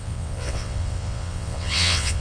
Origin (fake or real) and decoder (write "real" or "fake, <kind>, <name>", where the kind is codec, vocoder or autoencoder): fake, vocoder, WaveNeXt